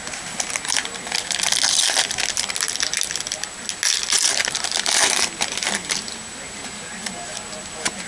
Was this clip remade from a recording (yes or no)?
no